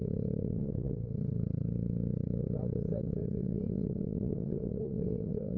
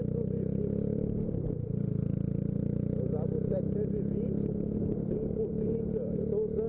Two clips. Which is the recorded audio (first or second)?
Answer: second